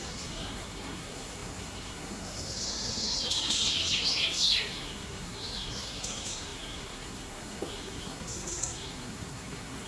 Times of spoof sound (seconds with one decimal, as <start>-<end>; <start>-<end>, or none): 0.0-9.9